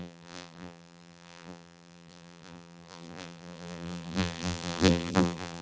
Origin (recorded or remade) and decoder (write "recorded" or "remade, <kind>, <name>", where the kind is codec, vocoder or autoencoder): remade, vocoder, BigVGAN v2